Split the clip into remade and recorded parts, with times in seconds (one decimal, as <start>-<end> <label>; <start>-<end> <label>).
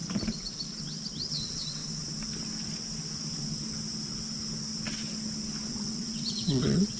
0.0-1.3 recorded; 1.3-1.8 remade; 1.8-5.7 recorded; 5.7-7.0 remade